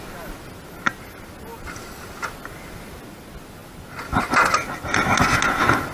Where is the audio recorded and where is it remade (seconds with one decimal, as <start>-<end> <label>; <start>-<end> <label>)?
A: 0.0-5.9 recorded